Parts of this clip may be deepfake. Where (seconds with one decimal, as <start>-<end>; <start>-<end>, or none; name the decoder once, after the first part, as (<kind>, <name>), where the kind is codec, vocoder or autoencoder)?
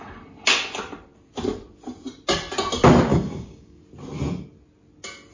3.1-3.8 (codec, DAC)